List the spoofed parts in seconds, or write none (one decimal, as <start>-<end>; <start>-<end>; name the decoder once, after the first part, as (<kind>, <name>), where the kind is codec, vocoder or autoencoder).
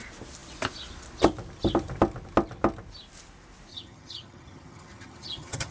3.7-5.7 (vocoder, HiFi-GAN)